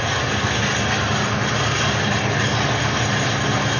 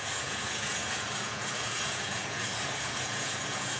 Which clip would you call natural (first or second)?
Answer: first